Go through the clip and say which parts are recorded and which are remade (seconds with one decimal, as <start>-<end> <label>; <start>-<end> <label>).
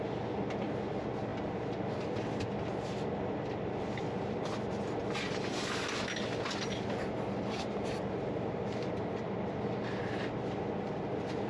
0.0-11.5 recorded